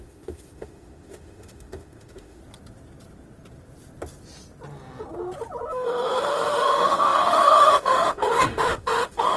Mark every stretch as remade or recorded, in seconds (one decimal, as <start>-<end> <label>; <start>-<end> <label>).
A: 0.0-2.4 remade; 2.4-5.7 recorded; 5.7-9.4 remade

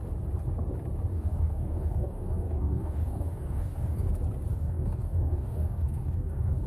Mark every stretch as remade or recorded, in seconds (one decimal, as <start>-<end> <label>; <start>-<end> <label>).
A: 0.0-1.1 recorded; 1.1-4.1 remade; 4.1-4.5 recorded; 4.5-6.7 remade

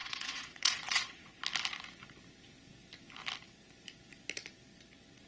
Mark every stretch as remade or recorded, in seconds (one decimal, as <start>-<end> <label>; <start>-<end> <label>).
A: 0.0-1.3 remade; 1.3-5.3 recorded